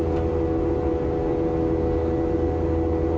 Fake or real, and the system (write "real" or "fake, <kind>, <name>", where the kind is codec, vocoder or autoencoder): real